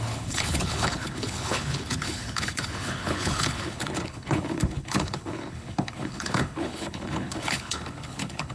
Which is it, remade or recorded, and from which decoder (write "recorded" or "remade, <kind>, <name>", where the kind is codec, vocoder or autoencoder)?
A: remade, codec, HILCodec